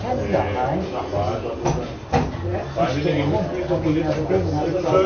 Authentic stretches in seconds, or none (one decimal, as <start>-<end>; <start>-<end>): 0.0-5.1